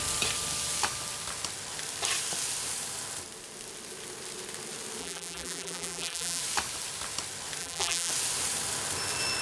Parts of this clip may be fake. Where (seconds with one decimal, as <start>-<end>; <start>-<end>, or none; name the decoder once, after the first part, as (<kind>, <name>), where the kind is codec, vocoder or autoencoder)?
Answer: 5.0-6.4 (vocoder, BigVGAN v2); 7.6-8.1